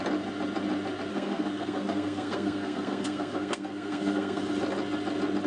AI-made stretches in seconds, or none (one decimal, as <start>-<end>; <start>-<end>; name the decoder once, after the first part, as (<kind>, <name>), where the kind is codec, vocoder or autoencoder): 1.1-4.4 (codec, SNAC)